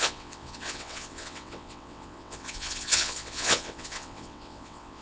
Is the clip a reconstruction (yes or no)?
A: yes